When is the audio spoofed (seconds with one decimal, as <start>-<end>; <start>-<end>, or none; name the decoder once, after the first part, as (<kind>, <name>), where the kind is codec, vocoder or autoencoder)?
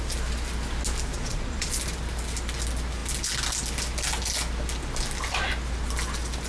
1.1-1.7 (vocoder, Vocos)